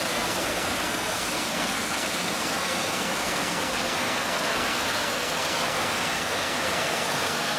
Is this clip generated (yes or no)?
yes